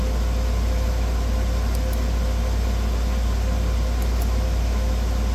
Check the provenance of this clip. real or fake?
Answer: real